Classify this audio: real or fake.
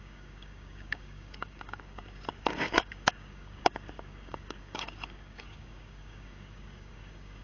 fake